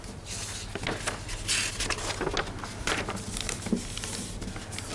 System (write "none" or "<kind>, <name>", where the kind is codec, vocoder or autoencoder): none